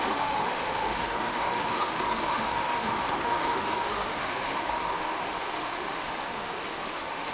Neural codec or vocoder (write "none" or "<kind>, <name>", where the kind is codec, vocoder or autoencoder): autoencoder, DAC-VAE